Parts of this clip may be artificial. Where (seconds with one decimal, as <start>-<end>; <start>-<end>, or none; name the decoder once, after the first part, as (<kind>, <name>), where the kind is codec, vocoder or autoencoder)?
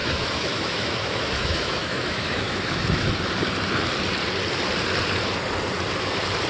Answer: 0.0-3.1 (autoencoder, DAC-VAE)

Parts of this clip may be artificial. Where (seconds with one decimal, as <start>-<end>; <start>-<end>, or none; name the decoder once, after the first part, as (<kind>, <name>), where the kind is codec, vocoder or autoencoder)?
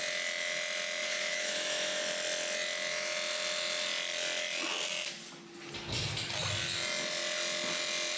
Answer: 1.0-2.0 (autoencoder, DAC-VAE)